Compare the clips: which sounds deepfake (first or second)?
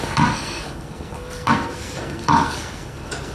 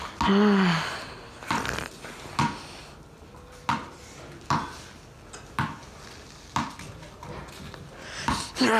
first